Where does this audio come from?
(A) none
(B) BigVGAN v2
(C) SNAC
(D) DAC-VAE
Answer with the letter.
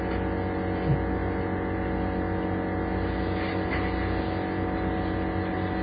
A